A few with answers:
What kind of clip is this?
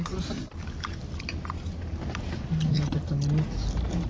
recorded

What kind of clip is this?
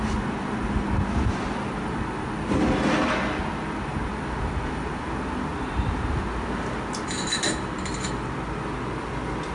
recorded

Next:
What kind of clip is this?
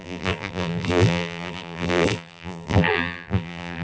remade